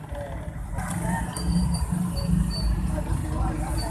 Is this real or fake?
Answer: real